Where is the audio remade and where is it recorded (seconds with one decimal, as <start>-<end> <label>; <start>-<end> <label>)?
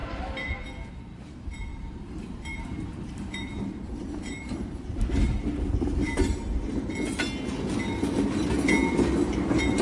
0.0-0.6 remade; 0.6-1.7 recorded; 1.7-6.4 remade; 6.4-9.8 recorded